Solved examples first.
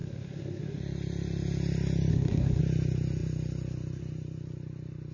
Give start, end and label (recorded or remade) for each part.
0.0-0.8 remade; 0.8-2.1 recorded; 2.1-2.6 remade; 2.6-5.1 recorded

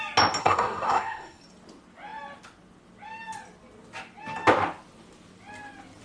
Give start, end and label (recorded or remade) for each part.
0.0-0.4 recorded; 0.4-1.4 remade; 1.4-6.0 recorded

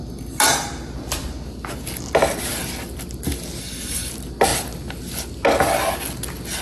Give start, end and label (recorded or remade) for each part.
0.0-3.6 recorded; 3.6-4.1 remade; 4.1-6.6 recorded